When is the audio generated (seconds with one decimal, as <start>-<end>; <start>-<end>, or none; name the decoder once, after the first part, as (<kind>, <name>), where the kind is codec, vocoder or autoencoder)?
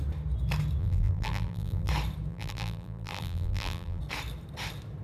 0.8-1.9 (vocoder, BigVGAN v2); 2.3-4.0